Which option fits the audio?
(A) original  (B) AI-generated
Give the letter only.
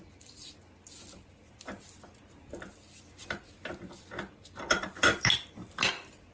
A